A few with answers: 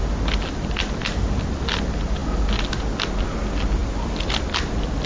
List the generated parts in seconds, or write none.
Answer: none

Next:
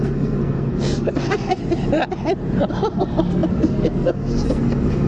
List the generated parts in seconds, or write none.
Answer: 0.0-1.6 (codec, SNAC); 2.9-5.1